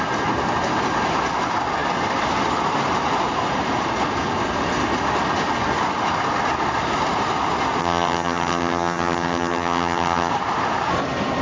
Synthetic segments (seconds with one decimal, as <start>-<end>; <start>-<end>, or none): 7.8-10.3